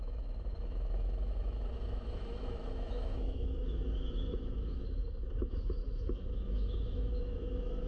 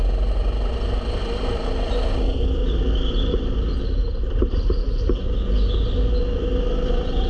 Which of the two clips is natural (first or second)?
second